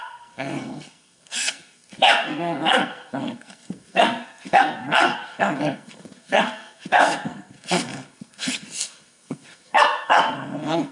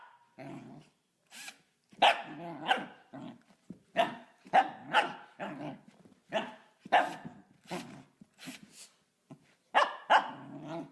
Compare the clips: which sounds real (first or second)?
second